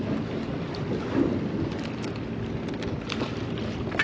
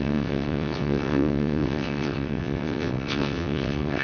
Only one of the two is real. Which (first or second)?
first